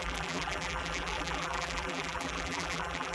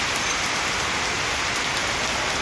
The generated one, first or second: first